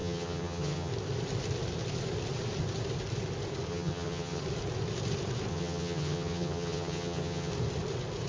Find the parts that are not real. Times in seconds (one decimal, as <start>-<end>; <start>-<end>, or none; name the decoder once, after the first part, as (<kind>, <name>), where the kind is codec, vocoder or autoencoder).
0.0-0.9 (vocoder, HiFi-GAN); 3.7-4.4; 5.5-7.5